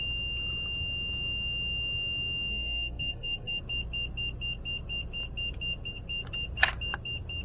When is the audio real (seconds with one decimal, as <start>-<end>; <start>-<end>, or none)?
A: 0.0-2.5; 3.6-7.4